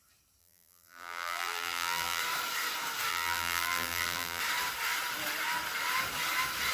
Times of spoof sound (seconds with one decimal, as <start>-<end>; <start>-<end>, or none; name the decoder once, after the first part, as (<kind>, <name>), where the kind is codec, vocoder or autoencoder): 0.4-2.2 (vocoder, BigVGAN v2); 3.1-4.4